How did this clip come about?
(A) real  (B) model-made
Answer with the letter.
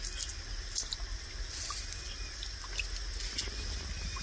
A